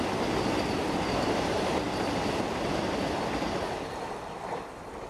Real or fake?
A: real